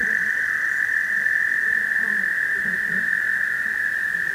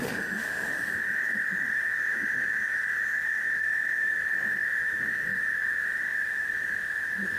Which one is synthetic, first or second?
second